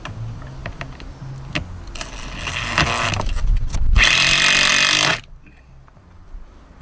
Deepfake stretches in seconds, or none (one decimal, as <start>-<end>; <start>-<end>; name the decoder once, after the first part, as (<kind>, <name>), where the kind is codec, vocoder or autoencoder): none